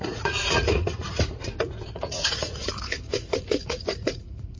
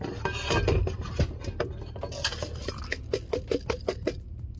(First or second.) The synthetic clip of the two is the first